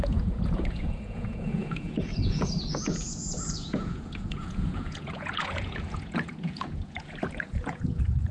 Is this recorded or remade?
remade